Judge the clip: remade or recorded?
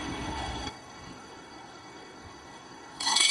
remade